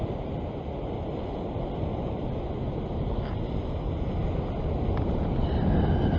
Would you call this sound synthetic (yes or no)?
no